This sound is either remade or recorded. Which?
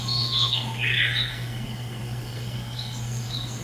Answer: remade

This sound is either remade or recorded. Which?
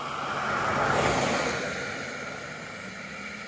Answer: recorded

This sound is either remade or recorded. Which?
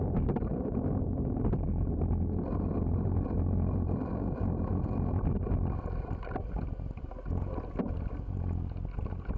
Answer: recorded